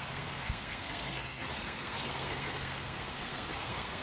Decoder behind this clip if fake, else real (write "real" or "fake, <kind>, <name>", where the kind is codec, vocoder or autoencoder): fake, codec, SNAC